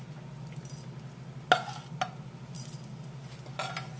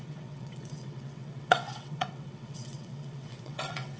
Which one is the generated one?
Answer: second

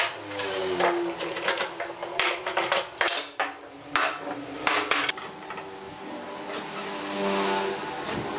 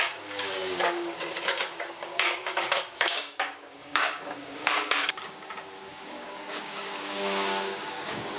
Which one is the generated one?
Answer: second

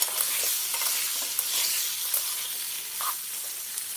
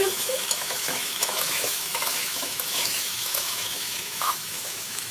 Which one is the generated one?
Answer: second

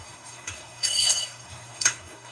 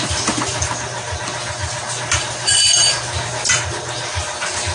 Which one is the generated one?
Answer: first